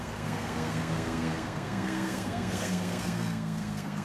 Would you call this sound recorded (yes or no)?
no